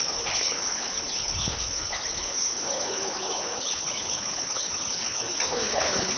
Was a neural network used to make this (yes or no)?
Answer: yes